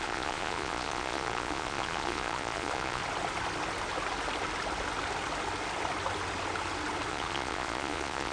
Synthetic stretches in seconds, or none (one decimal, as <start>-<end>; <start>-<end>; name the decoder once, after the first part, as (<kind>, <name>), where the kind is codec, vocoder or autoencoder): 0.0-3.0 (vocoder, Vocos); 7.1-8.3